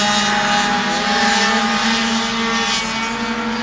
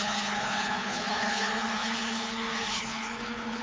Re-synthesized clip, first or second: second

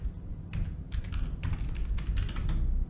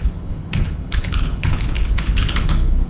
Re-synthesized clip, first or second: second